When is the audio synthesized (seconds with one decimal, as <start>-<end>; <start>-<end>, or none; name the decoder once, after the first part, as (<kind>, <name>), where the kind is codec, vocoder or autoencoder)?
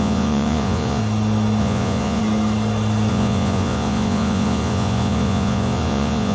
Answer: 0.0-1.0 (vocoder, Vocos); 1.6-2.2; 3.1-6.3